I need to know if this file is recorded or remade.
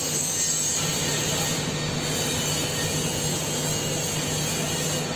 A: recorded